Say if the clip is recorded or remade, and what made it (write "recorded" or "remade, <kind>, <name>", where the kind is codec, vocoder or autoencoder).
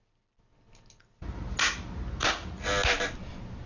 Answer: recorded